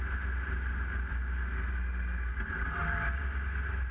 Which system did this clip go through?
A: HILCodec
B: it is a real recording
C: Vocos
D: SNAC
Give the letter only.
B